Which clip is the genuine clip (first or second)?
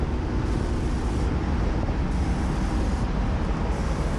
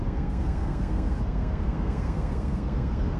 first